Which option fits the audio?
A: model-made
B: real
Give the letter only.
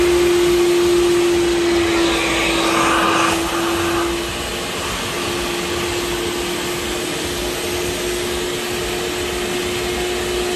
B